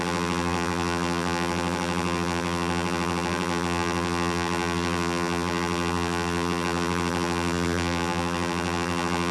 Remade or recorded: remade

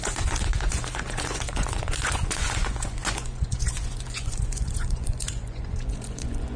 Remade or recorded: remade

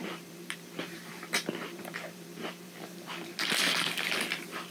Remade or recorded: remade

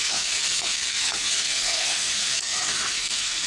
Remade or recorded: remade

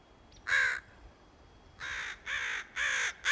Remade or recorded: recorded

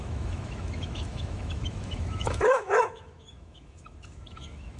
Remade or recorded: remade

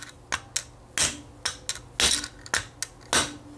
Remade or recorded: recorded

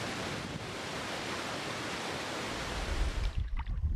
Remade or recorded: recorded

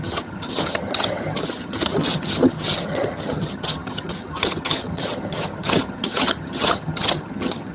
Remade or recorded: remade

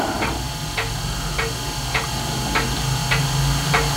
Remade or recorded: recorded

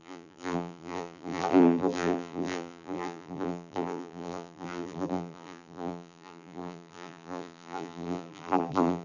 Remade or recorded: remade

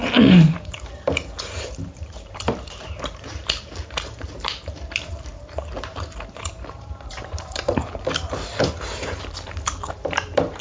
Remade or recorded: remade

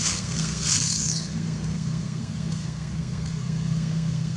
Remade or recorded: remade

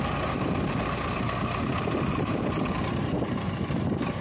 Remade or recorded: remade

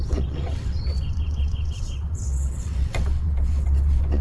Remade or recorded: remade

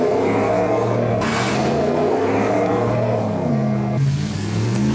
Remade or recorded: remade